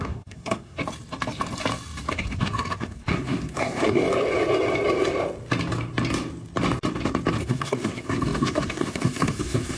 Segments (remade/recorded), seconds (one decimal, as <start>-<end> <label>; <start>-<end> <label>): 0.0-0.8 remade; 0.8-2.1 recorded; 2.1-4.0 remade; 4.0-7.4 recorded; 7.4-9.8 remade